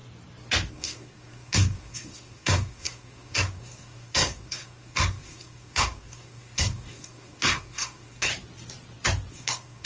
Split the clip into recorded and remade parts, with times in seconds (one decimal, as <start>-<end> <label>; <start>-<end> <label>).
0.0-0.7 recorded; 0.7-8.3 remade; 8.3-9.3 recorded; 9.3-9.9 remade